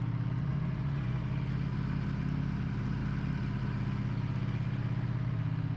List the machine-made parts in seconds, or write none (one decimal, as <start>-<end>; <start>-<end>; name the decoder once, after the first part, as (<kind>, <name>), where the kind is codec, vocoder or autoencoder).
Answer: 0.5-1.2 (vocoder, Vocos)